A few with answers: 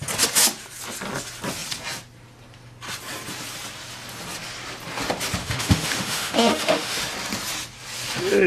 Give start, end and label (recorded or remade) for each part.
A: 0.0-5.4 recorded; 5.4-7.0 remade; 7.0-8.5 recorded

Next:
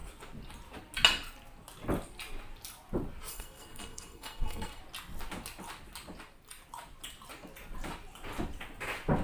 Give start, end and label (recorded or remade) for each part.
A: 0.0-3.3 recorded; 3.3-4.8 remade; 4.8-9.2 recorded

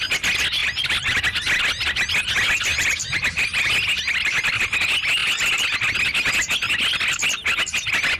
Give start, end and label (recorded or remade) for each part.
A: 0.0-0.6 recorded; 0.6-1.2 remade; 1.2-2.7 recorded; 2.7-3.4 remade; 3.4-8.2 recorded

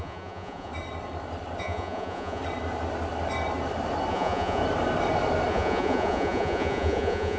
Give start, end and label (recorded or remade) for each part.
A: 0.0-0.7 remade; 0.7-1.6 recorded; 1.6-2.4 remade; 2.4-4.1 recorded; 4.1-4.6 remade; 4.6-5.5 recorded; 5.5-7.4 remade

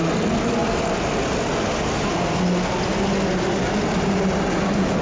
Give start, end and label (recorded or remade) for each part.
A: 0.0-5.0 recorded

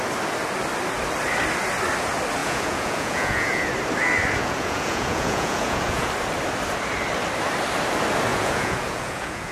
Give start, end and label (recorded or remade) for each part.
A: 0.0-2.4 recorded; 2.4-3.6 remade; 3.6-4.4 recorded; 4.4-6.1 remade; 6.1-8.3 recorded; 8.3-9.5 remade

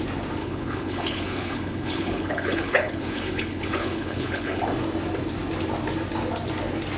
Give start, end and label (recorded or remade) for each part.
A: 0.0-0.4 recorded; 0.4-4.6 remade; 4.6-7.0 recorded

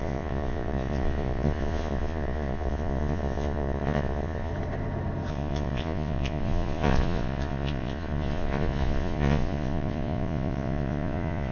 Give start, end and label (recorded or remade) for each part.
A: 0.0-4.5 remade; 4.5-5.3 recorded; 5.3-11.5 remade